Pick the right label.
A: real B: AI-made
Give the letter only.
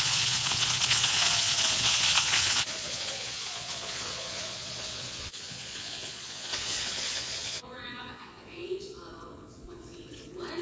B